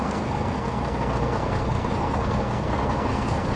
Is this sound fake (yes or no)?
yes